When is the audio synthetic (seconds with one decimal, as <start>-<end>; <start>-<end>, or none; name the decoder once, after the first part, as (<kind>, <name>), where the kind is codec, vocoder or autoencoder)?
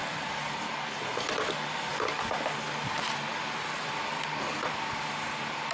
0.0-2.2 (vocoder, BigVGAN v2); 3.3-5.7